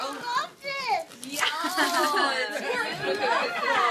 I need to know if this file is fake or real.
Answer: real